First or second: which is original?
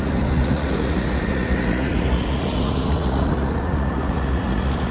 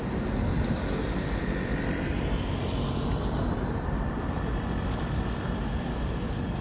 second